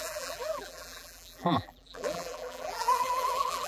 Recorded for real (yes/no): no